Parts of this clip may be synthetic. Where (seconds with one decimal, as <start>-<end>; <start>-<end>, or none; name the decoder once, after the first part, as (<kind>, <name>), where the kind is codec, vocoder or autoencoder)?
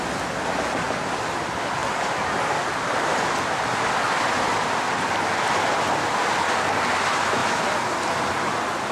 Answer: 7.4-8.5 (vocoder, BigVGAN v2)